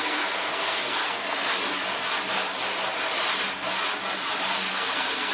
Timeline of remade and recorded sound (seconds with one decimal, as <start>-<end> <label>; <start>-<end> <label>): 0.0-1.5 remade; 1.5-4.7 recorded; 4.7-5.3 remade